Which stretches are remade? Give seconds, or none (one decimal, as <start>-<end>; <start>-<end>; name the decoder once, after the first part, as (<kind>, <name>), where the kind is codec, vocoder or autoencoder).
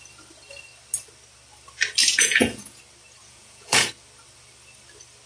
2.0-2.8 (vocoder, Vocos); 3.2-3.9